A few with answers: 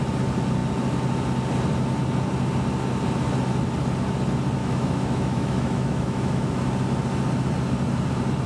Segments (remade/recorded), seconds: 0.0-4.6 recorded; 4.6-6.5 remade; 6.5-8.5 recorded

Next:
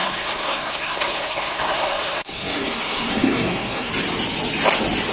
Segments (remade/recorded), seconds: 0.0-3.9 remade; 3.9-5.1 recorded

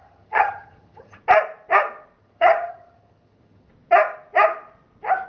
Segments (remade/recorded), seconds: 0.0-1.2 remade; 1.2-2.2 recorded; 2.2-3.7 remade; 3.7-5.3 recorded